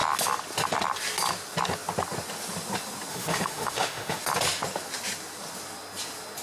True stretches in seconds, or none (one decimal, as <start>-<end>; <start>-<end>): 0.0-3.1; 4.2-6.4